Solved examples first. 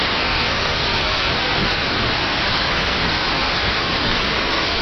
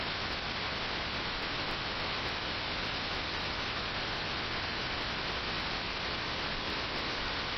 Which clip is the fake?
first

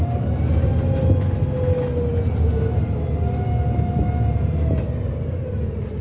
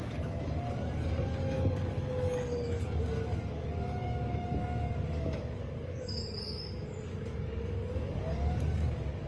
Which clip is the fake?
second